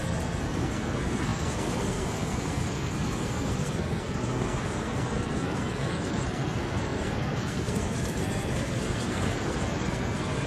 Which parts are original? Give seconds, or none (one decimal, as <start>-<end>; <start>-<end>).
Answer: none